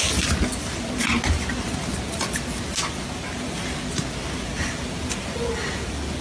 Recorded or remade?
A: recorded